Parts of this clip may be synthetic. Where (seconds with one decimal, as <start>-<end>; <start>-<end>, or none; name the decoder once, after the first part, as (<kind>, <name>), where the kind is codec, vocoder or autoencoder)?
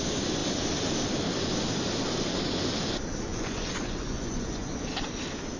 3.3-4.7 (vocoder, Vocos)